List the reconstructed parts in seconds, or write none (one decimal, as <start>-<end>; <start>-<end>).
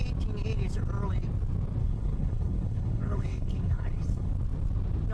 1.8-4.3